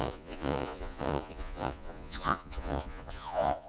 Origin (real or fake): fake